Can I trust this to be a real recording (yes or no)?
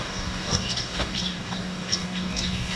no